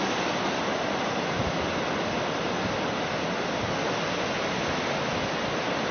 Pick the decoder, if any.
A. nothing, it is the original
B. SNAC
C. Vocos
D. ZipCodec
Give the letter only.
A